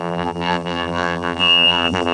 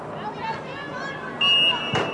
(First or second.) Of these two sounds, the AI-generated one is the first